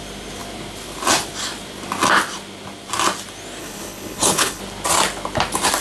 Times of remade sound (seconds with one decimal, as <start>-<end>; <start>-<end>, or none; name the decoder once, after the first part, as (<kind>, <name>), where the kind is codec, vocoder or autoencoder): 3.6-4.6 (codec, HILCodec)